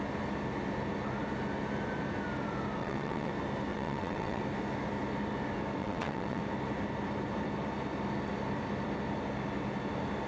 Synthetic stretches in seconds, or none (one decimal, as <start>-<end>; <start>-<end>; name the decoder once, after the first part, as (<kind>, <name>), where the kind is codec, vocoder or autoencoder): 2.8-3.3 (vocoder, WaveNeXt); 3.7-4.4; 5.8-6.4